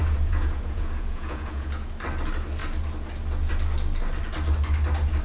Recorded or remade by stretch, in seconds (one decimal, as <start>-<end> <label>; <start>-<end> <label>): 0.0-1.9 remade; 1.9-5.2 recorded